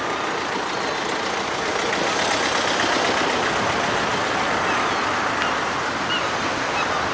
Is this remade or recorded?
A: recorded